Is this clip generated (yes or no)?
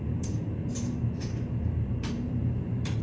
yes